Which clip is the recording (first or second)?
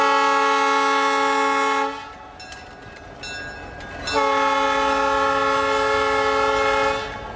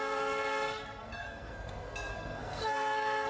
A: first